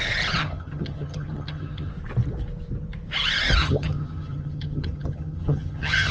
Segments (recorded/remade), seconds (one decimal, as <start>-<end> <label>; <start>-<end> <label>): 0.0-0.4 recorded; 0.4-1.9 remade; 1.9-3.6 recorded; 3.6-6.1 remade